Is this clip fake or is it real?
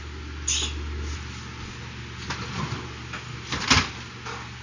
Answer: real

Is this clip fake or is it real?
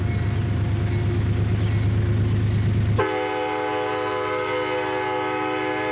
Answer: real